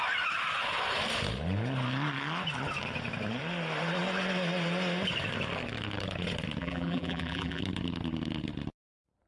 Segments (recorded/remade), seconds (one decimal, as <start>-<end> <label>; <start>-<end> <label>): 0.0-6.6 recorded; 6.6-7.6 remade; 7.6-9.3 recorded